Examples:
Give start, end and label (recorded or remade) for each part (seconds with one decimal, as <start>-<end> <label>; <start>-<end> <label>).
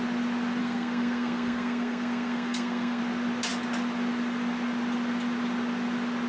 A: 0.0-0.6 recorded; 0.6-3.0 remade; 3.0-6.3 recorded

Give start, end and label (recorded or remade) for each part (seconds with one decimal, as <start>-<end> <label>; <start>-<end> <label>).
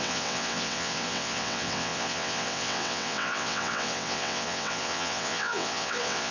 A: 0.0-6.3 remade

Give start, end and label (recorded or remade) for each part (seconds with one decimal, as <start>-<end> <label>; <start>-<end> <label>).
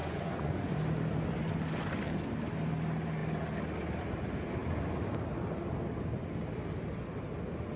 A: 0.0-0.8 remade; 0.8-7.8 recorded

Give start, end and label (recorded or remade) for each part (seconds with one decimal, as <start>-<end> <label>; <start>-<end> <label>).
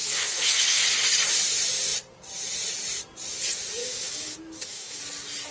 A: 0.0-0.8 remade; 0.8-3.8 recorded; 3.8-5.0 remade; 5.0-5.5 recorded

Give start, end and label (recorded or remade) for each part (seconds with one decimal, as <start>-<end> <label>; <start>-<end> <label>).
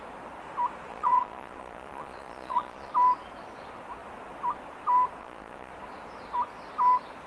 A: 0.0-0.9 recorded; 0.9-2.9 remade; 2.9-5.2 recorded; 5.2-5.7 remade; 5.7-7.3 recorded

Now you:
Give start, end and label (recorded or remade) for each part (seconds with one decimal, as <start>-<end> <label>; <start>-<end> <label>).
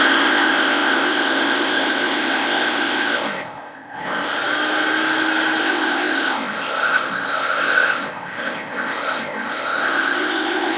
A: 0.0-4.4 remade; 4.4-5.6 recorded; 5.6-10.8 remade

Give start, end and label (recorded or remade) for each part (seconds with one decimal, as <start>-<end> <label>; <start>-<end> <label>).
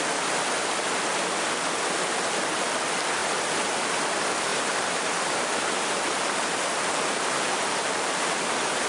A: 0.0-4.5 recorded; 4.5-8.9 remade